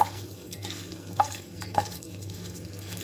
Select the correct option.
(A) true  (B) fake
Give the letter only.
B